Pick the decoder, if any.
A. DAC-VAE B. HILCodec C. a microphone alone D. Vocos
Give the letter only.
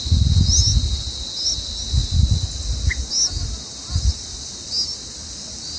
C